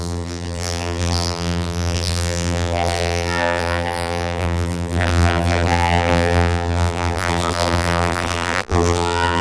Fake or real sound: fake